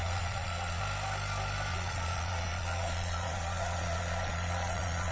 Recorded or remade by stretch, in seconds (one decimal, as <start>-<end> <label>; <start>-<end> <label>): 0.0-0.8 remade; 0.8-1.7 recorded; 1.7-5.1 remade